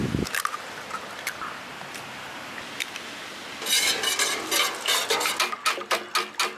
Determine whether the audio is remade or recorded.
recorded